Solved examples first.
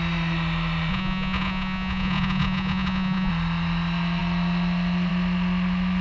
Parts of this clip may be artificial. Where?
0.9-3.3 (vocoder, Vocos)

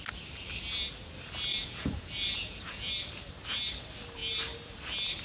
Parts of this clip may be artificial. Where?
1.5-2.9 (vocoder, Vocos)

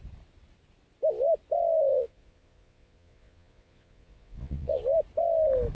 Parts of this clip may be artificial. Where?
1.9-4.8 (vocoder, Vocos)

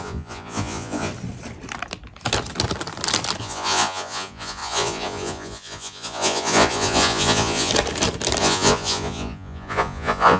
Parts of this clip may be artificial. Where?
0.0-1.1 (vocoder, Vocos); 3.4-7.7; 8.4-10.4

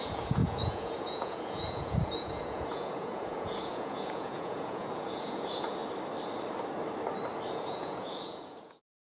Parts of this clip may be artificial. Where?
0.0-5.8 (vocoder, Vocos); 7.5-9.1

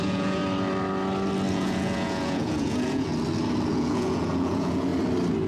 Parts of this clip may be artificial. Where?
0.0-0.4 (vocoder, Vocos); 1.5-3.1; 3.7-4.9